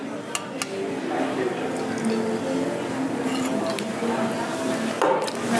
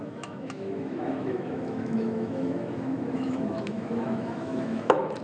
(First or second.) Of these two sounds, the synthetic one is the second